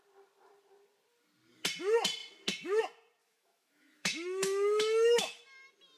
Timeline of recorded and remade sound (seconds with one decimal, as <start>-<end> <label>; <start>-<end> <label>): 0.0-3.2 recorded; 3.2-5.4 remade; 5.4-6.0 recorded

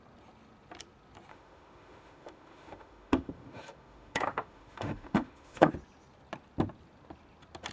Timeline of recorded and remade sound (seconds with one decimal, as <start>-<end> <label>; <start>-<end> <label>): 0.0-1.3 recorded; 1.3-5.7 remade; 5.7-7.7 recorded

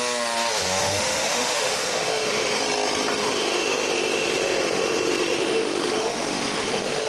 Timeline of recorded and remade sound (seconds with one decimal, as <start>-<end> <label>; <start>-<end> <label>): 0.0-0.8 recorded; 0.8-2.6 remade; 2.6-3.2 recorded; 3.2-7.1 remade